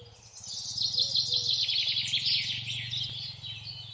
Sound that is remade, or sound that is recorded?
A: recorded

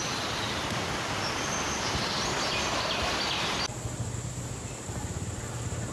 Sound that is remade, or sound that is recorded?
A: recorded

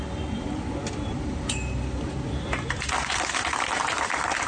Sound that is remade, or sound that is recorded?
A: remade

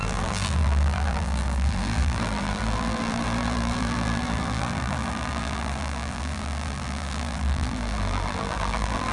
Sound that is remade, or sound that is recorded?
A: remade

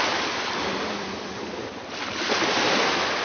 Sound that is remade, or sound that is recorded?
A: recorded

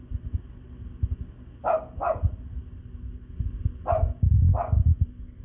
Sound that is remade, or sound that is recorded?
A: recorded